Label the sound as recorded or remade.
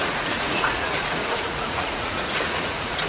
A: remade